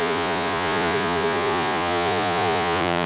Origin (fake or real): fake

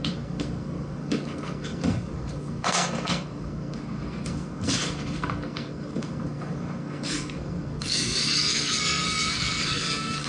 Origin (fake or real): fake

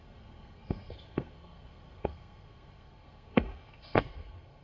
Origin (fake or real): fake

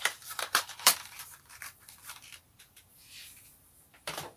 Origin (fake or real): fake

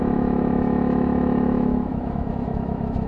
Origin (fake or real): fake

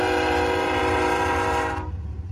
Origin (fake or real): fake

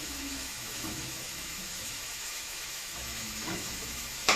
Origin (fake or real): fake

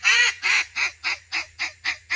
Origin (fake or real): fake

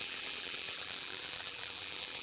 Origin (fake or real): fake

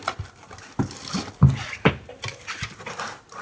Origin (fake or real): real